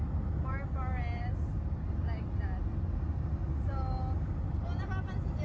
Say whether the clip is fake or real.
real